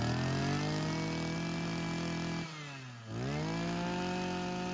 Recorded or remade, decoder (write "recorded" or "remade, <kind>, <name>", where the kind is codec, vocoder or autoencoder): recorded